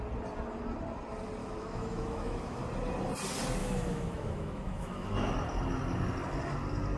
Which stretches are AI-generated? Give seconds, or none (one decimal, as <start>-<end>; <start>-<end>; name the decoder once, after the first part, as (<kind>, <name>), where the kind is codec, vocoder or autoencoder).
1.4-2.6 (autoencoder, DAC-VAE); 3.6-5.3